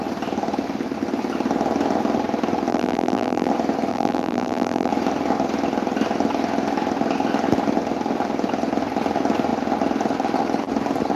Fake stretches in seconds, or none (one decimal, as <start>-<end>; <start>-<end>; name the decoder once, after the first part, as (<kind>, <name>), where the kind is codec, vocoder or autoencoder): 2.7-3.5 (vocoder, BigVGAN v2); 3.9-4.9